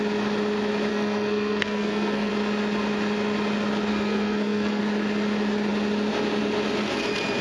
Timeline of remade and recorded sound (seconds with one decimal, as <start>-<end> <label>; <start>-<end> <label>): 0.0-0.9 recorded; 0.9-2.3 remade; 2.3-3.9 recorded; 3.9-4.8 remade; 4.8-7.4 recorded